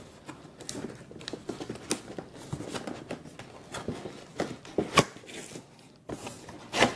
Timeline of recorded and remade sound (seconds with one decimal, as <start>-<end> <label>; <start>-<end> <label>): 0.0-7.0 recorded